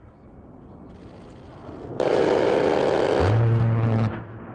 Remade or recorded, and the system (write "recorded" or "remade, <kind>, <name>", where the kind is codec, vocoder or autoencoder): recorded